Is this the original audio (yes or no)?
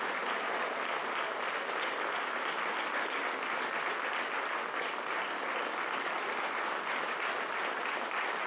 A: yes